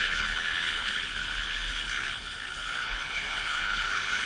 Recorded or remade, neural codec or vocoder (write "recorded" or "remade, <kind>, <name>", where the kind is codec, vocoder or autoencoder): remade, codec, HILCodec